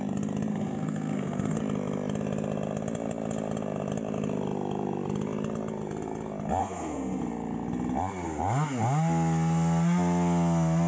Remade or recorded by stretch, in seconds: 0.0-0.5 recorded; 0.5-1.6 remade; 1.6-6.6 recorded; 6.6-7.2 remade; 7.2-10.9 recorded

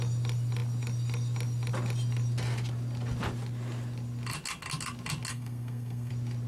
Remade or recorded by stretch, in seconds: 0.0-5.3 recorded; 5.3-6.1 remade; 6.1-6.5 recorded